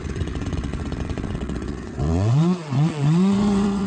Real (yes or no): no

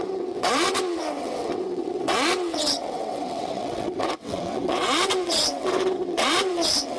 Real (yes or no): no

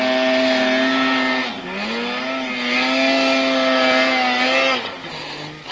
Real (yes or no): yes